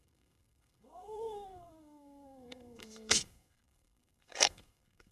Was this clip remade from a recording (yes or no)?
yes